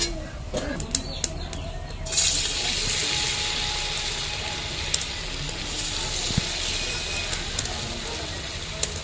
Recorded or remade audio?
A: recorded